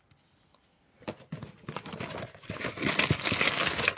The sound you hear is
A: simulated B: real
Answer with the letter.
B